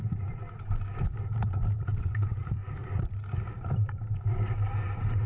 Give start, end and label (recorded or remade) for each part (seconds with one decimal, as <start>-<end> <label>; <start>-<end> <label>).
0.0-2.6 remade; 2.6-3.4 recorded; 3.4-5.3 remade